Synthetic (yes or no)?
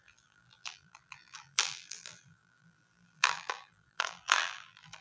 yes